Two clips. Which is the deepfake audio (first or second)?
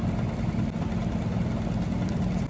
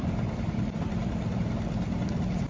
second